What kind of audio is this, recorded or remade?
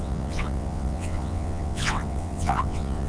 remade